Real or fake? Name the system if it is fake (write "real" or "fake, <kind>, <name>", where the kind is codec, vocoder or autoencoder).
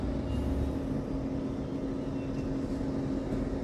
real